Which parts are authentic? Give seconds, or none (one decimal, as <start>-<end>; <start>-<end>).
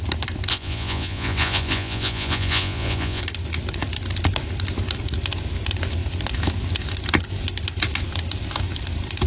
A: 0.0-0.5; 3.2-9.3